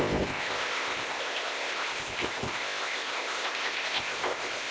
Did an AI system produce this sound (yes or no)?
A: yes